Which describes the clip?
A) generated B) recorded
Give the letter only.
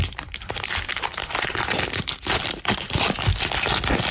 B